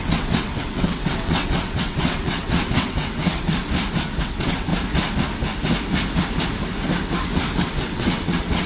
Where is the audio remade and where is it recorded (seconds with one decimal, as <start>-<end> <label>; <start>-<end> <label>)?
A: 0.0-3.6 remade; 3.6-4.2 recorded; 4.2-4.7 remade; 4.7-7.6 recorded; 7.6-8.7 remade

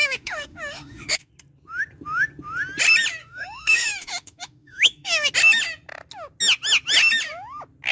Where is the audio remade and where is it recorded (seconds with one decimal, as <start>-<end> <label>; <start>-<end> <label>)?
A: 0.0-1.3 remade; 1.3-3.2 recorded; 3.2-5.3 remade; 5.3-7.9 recorded

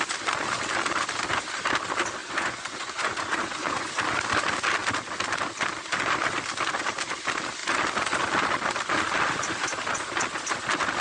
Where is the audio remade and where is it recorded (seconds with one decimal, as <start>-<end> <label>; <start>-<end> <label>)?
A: 0.0-2.2 recorded; 2.2-3.9 remade; 3.9-11.0 recorded

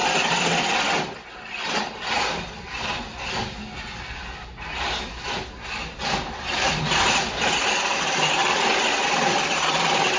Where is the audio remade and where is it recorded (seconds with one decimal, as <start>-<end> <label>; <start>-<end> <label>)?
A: 0.0-10.2 recorded

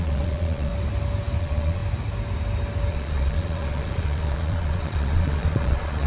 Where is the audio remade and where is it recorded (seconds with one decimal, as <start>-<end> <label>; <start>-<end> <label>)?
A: 0.0-0.7 remade; 0.7-1.4 recorded; 1.4-1.8 remade; 1.8-2.9 recorded; 2.9-6.1 remade

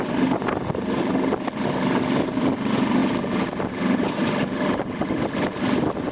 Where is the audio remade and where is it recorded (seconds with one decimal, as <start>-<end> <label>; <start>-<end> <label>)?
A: 0.0-6.1 recorded